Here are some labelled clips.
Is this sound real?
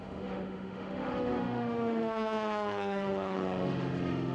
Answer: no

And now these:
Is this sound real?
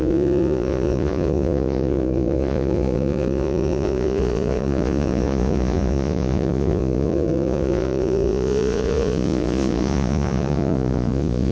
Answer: no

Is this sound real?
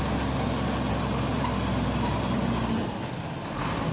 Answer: yes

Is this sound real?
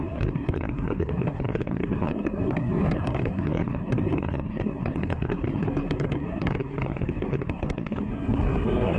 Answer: no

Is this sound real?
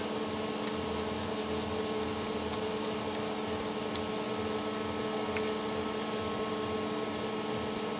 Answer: yes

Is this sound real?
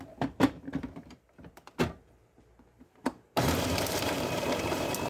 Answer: no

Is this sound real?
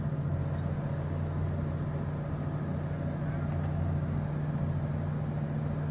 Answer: yes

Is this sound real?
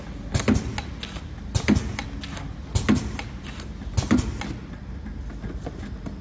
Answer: yes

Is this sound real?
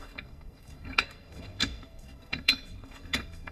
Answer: no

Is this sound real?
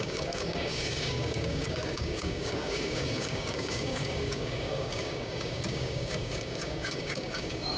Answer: no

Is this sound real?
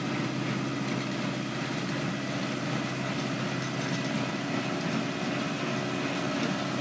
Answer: yes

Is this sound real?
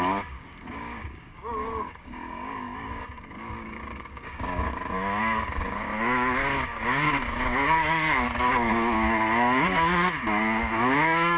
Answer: no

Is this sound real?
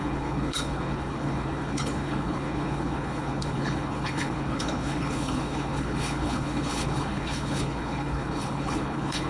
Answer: no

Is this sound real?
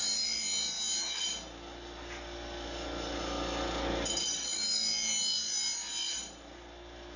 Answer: yes